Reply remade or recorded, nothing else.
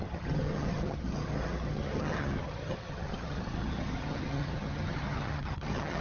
remade